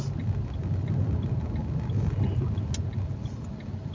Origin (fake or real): real